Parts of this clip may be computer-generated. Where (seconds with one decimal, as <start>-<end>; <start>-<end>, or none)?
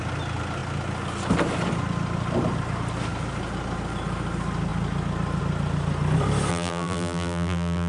6.5-7.9